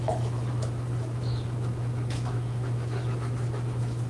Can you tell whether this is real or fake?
fake